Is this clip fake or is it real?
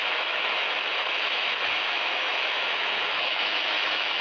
fake